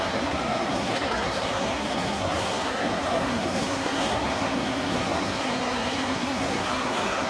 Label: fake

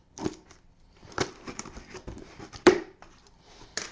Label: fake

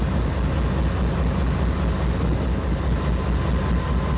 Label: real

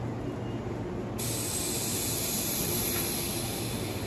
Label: real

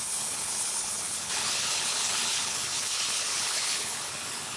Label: fake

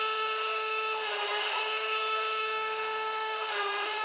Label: fake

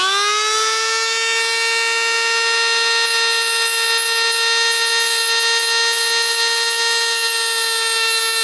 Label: real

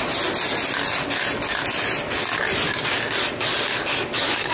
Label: real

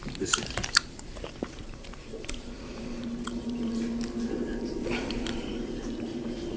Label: fake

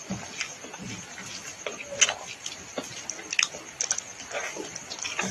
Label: real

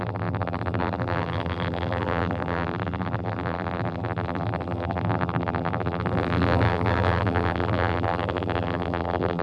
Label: fake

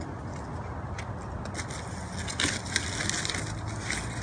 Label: real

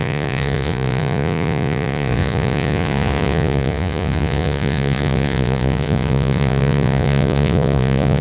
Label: fake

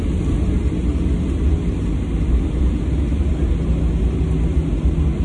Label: real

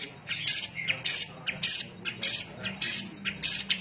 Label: real